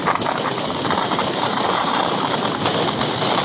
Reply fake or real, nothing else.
real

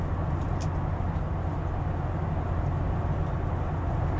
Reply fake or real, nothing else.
real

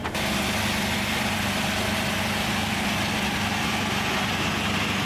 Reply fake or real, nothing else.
real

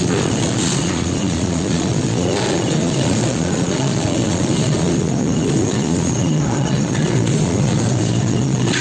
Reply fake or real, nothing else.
fake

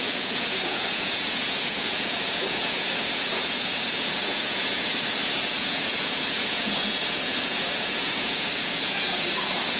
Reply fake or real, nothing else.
fake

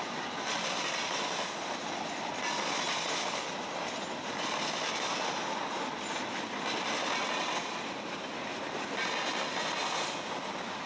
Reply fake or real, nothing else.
real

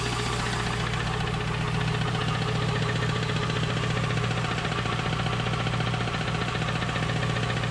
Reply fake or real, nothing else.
real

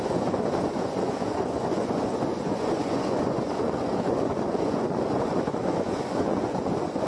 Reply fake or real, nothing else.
fake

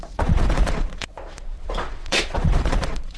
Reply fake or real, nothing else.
fake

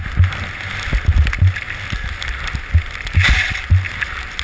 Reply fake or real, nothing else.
real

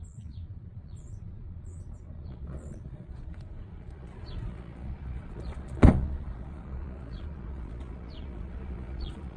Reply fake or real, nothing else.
fake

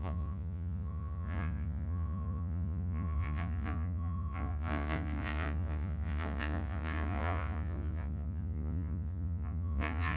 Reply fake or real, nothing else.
fake